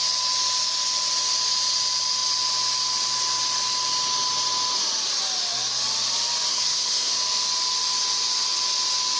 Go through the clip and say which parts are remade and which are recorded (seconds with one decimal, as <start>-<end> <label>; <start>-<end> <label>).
0.0-6.5 recorded; 6.5-7.1 remade; 7.1-9.2 recorded